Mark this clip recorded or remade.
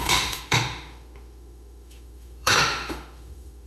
remade